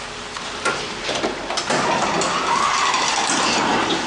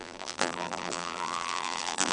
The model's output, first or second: second